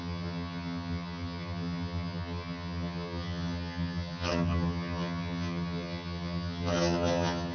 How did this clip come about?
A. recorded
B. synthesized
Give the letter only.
B